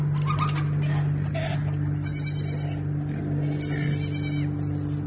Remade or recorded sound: recorded